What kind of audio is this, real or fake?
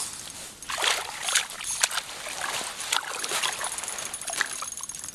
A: real